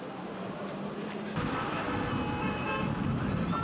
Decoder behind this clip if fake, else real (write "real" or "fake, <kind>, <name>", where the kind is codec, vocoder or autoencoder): real